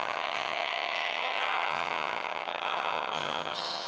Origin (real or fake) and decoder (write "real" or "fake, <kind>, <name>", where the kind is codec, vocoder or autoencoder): fake, vocoder, HiFi-GAN